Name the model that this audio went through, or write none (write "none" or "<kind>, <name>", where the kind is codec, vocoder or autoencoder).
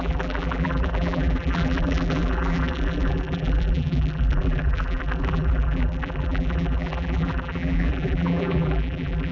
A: vocoder, BigVGAN v2